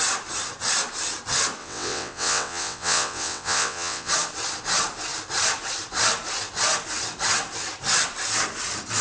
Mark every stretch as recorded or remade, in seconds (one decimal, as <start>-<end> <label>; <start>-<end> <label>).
0.0-1.6 recorded; 1.6-4.1 remade; 4.1-9.0 recorded